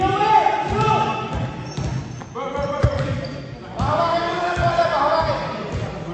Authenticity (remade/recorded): recorded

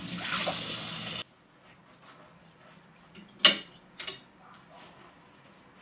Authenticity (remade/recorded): recorded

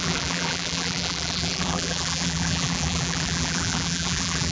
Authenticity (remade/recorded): remade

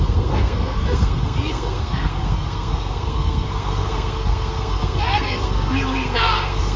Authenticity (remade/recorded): remade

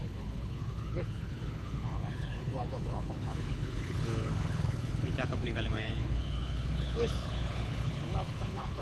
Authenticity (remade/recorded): remade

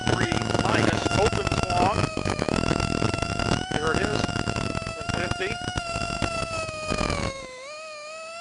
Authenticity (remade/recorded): remade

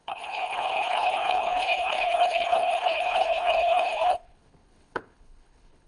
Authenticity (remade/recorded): remade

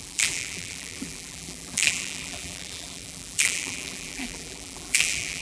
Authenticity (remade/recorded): remade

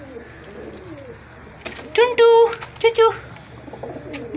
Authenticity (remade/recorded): recorded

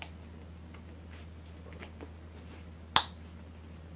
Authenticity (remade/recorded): recorded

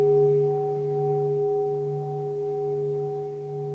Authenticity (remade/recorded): recorded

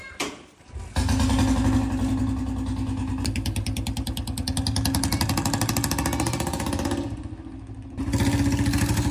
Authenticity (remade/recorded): recorded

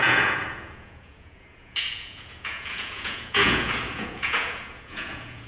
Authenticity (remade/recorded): remade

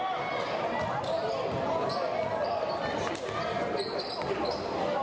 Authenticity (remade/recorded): recorded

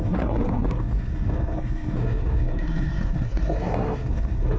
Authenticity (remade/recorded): remade